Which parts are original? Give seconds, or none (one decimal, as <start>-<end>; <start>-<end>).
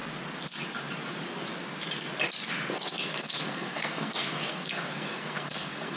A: 0.0-3.0